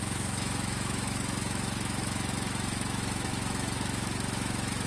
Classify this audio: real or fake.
fake